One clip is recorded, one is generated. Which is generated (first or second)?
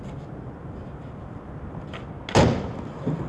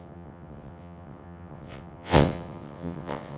second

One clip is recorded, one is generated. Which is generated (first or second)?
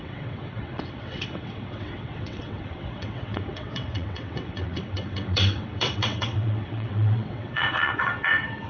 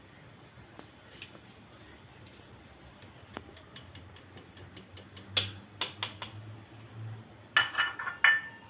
first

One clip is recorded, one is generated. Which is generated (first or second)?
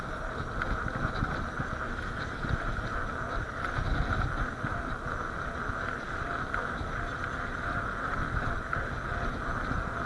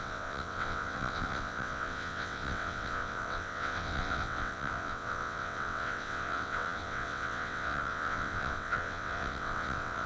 second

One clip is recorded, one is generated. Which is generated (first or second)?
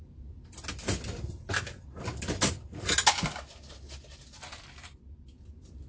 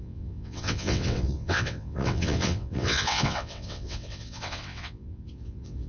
second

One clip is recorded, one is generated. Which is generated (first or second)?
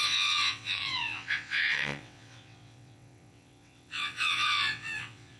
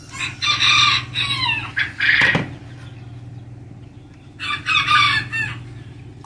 first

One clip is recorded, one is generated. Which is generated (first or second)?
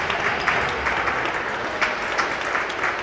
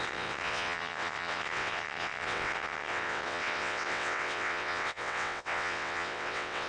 second